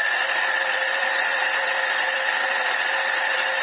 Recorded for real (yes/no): no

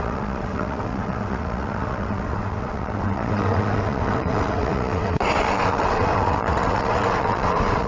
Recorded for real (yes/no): no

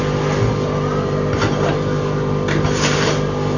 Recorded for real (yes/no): yes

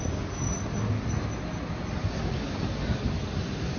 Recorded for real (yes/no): yes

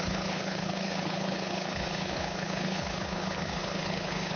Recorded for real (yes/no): no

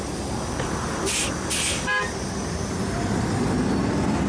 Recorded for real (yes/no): yes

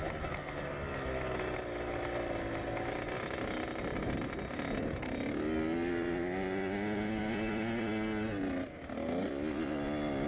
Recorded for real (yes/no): yes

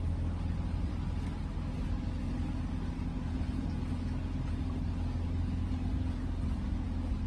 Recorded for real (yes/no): yes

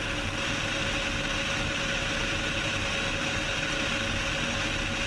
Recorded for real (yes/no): yes